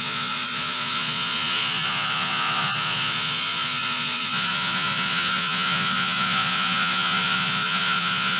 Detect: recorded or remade remade